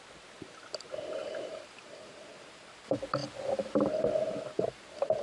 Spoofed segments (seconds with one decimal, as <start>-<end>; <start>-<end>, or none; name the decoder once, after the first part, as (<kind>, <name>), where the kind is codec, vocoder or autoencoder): 1.2-2.2 (vocoder, BigVGAN v2)